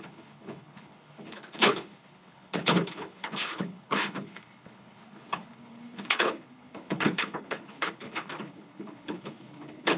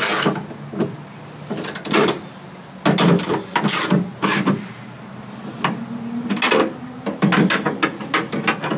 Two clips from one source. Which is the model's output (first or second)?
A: first